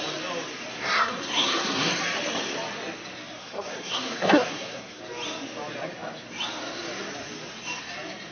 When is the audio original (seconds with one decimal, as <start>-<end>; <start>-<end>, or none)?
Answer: 0.0-0.7; 1.9-3.4; 5.0-8.3